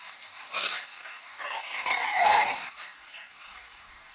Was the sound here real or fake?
fake